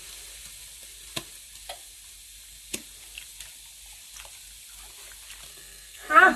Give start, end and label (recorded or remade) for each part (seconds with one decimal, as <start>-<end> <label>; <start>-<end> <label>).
0.0-5.5 recorded; 5.5-6.4 remade

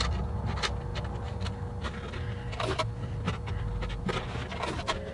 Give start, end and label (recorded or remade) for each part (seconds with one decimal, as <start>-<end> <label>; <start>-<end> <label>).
0.0-5.1 recorded

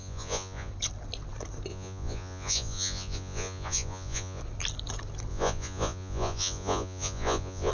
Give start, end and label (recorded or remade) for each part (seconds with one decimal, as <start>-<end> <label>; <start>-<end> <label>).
0.0-0.7 remade; 0.7-1.7 recorded; 1.7-4.4 remade; 4.4-5.3 recorded; 5.3-7.7 remade

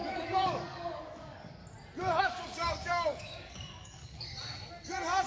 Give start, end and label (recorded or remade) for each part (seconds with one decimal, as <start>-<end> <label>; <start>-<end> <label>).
0.0-1.6 remade; 1.6-2.2 recorded; 2.2-4.0 remade; 4.0-5.3 recorded

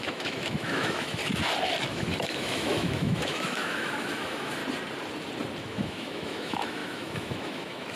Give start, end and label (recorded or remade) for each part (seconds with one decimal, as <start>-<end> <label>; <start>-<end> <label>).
0.0-1.2 remade; 1.2-1.9 recorded; 1.9-4.6 remade; 4.6-5.6 recorded; 5.6-7.9 remade

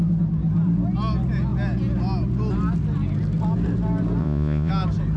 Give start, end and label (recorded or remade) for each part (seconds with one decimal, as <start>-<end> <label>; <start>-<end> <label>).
0.0-4.2 recorded; 4.2-4.7 remade; 4.7-5.2 recorded

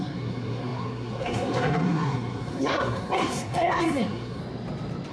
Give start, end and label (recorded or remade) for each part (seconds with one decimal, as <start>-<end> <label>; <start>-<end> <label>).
0.0-4.4 remade; 4.4-5.1 recorded